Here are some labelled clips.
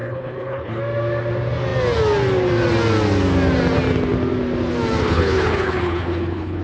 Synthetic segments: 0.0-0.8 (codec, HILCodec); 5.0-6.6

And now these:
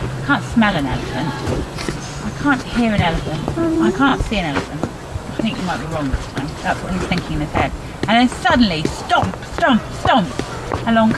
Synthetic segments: 0.0-7.6 (vocoder, Vocos); 8.9-11.2